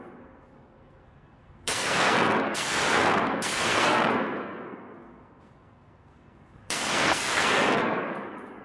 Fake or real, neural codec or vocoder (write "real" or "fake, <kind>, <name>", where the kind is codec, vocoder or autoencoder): fake, codec, SNAC